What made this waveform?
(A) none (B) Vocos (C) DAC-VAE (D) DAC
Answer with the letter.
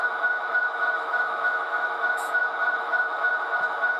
C